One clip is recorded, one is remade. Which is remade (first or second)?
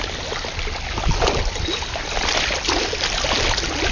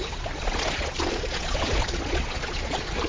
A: second